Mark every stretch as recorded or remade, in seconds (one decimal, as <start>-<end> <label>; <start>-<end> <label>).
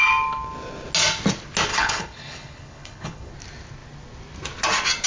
0.0-1.7 recorded; 1.7-3.3 remade; 3.3-5.1 recorded